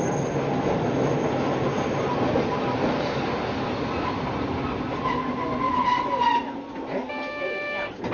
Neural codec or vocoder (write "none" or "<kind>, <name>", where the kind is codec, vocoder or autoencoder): none